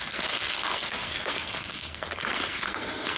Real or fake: fake